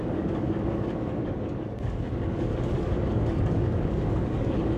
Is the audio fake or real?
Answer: fake